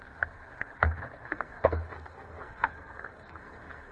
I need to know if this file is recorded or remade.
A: remade